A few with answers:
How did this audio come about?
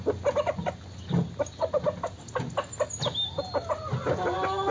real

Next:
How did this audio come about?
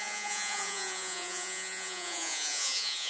fake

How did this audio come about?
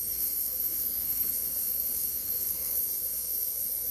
fake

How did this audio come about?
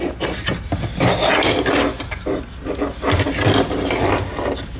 real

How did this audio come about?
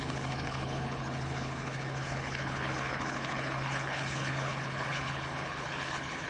fake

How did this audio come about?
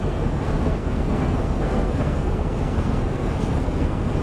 fake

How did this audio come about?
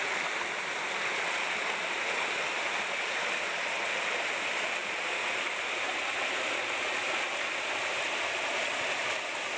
real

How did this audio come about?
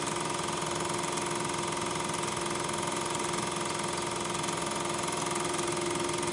real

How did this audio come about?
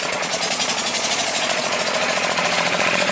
fake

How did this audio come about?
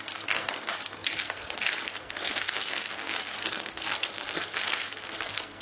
fake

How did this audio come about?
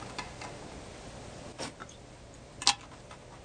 real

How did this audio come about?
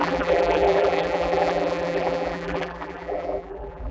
fake